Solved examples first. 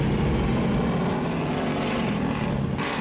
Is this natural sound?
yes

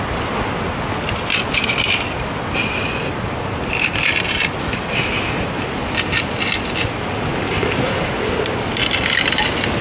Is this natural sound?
yes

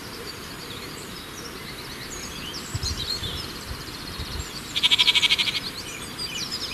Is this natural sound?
no